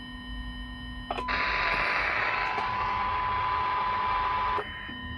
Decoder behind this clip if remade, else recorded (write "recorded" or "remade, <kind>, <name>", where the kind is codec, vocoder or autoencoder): recorded